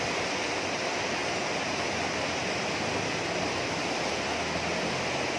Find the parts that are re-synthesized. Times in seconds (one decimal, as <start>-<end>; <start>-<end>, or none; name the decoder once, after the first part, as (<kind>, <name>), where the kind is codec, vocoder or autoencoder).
none